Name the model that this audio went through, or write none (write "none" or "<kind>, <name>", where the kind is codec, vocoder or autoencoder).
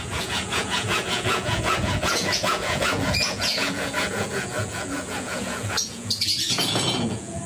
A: vocoder, Vocos